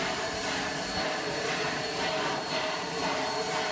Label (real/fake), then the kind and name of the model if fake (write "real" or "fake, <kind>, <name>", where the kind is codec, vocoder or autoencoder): fake, vocoder, BigVGAN v2